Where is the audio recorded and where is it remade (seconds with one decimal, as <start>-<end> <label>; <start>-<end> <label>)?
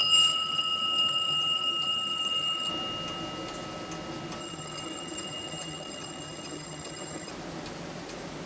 0.0-2.7 remade; 2.7-4.4 recorded; 4.4-7.3 remade; 7.3-8.5 recorded